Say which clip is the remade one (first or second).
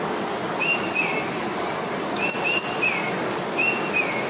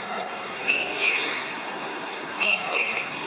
second